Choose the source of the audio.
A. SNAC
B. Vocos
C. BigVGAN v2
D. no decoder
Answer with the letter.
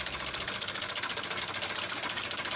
D